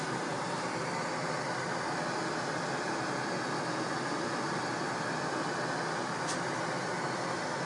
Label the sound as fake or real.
real